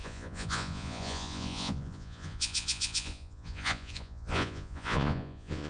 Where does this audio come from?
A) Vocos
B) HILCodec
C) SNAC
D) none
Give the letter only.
A